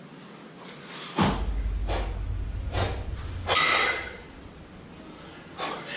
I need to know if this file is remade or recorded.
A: recorded